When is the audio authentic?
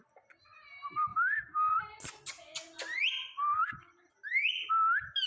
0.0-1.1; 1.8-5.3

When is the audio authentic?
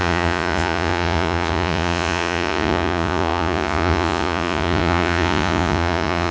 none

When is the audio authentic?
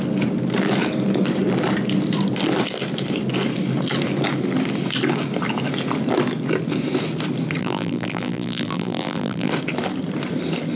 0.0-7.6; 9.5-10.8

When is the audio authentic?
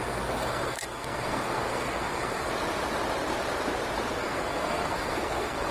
2.5-4.2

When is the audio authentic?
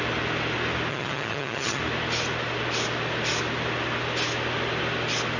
0.0-0.9; 1.8-5.4